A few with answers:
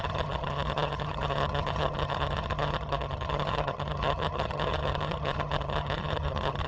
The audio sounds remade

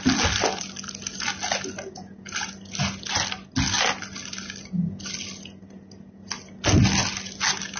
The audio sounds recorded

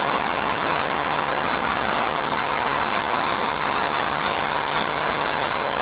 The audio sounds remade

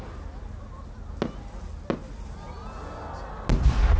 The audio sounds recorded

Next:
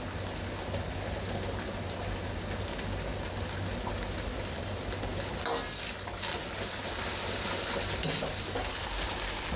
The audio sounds recorded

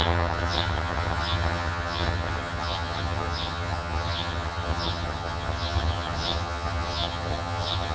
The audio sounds remade